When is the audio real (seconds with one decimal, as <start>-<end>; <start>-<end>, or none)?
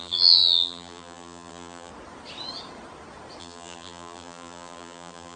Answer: 1.9-3.4